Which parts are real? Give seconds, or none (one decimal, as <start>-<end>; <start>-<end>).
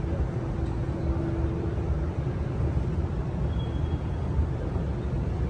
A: 0.0-5.5